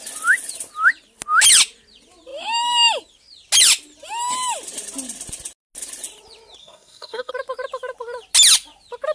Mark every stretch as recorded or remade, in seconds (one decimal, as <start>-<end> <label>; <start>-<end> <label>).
0.0-6.6 recorded; 6.6-7.3 remade; 7.3-9.1 recorded